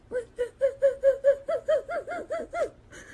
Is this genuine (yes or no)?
yes